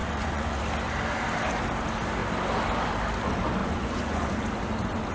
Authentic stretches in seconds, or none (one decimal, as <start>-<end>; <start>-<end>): 0.6-3.6; 4.3-5.1